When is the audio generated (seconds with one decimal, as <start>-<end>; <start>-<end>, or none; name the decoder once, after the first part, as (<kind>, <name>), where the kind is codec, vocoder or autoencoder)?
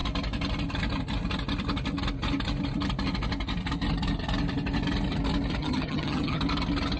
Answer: 5.6-6.4 (vocoder, HiFi-GAN)